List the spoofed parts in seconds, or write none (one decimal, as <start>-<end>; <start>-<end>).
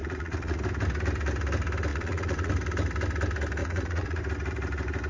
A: 0.0-0.6; 1.9-2.5; 3.6-4.2